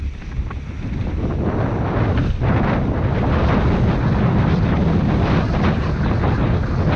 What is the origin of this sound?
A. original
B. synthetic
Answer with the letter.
A